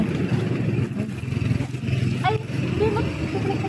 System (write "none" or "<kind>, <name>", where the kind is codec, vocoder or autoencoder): none